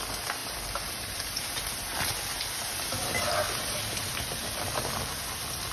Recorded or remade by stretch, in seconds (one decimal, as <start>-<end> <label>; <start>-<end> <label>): 0.0-0.4 recorded; 0.4-1.7 remade; 1.7-2.3 recorded; 2.3-5.0 remade; 5.0-5.7 recorded

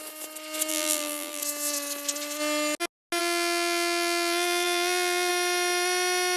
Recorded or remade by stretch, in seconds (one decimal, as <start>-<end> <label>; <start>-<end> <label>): 0.0-0.7 recorded; 0.7-1.4 remade; 1.4-3.2 recorded; 3.2-5.3 remade; 5.3-6.4 recorded

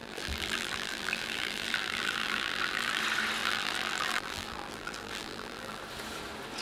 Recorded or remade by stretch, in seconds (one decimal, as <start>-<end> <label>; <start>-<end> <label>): 0.0-3.0 remade; 3.0-3.4 recorded; 3.4-5.8 remade; 5.8-6.6 recorded